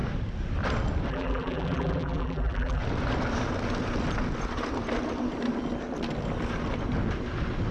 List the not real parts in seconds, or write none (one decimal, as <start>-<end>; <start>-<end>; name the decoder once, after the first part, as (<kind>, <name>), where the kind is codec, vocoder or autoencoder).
1.1-2.8 (vocoder, BigVGAN v2)